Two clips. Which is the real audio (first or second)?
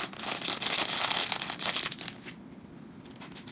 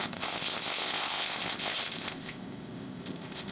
first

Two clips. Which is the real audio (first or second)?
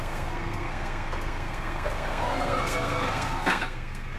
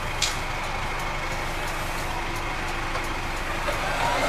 second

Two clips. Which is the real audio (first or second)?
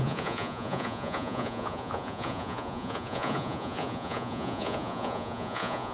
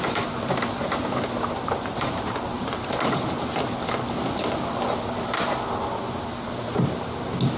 second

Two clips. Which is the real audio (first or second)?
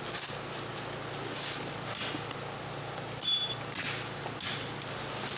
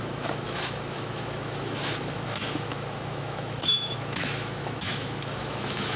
first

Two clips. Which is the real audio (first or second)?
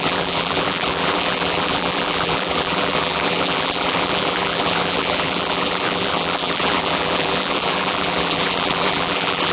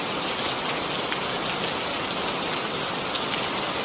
second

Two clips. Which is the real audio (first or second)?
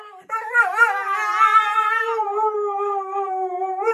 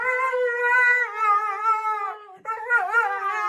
second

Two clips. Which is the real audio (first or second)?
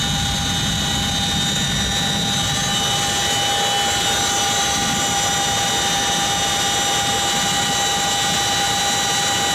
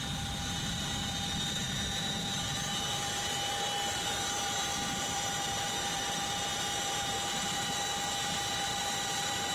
first